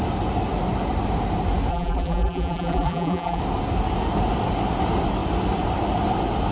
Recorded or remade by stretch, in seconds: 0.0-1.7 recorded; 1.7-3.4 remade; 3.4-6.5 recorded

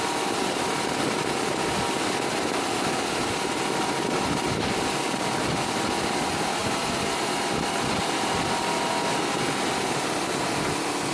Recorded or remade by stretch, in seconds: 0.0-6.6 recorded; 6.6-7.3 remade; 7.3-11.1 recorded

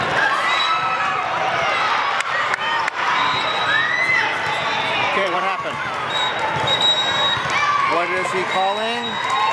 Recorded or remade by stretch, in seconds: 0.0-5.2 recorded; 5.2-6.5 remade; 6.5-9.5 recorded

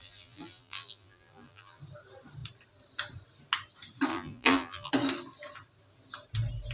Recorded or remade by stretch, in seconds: 0.0-1.8 remade; 1.8-4.1 recorded; 4.1-4.9 remade; 4.9-6.7 recorded

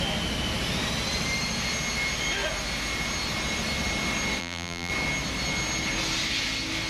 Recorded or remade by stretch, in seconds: 0.0-4.4 recorded; 4.4-4.9 remade; 4.9-6.9 recorded